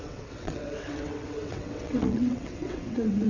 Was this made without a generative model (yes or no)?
no